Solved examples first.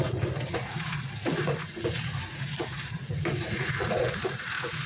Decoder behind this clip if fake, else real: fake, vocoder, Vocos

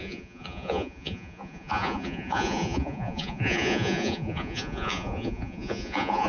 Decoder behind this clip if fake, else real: fake, vocoder, Vocos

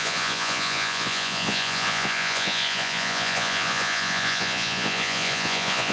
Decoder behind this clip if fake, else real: fake, vocoder, Vocos